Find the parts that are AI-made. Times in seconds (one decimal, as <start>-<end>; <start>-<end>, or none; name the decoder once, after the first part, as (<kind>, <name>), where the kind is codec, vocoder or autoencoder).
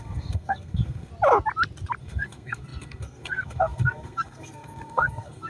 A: 0.0-1.1 (codec, SNAC); 2.0-5.5